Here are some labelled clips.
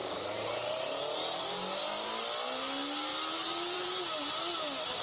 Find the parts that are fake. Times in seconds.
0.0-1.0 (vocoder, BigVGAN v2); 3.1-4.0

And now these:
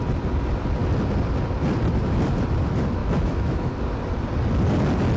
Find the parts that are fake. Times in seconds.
3.0-3.7 (autoencoder, DAC-VAE)

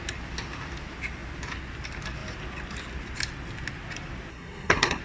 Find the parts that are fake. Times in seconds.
4.3-5.0 (codec, SNAC)

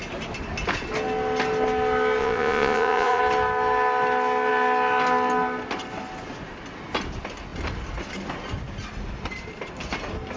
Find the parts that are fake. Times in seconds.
2.2-3.2 (vocoder, Vocos)

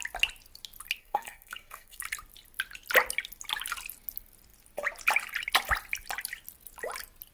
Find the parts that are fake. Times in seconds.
1.0-2.0 (codec, SNAC)